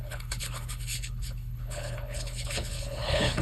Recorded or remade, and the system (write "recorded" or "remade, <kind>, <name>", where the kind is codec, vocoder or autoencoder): remade, codec, HILCodec